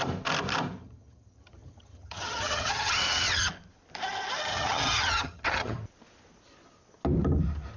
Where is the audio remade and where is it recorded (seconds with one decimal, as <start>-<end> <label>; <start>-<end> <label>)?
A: 0.0-0.8 recorded; 0.8-3.5 remade; 3.5-4.5 recorded; 4.5-5.8 remade; 5.8-7.8 recorded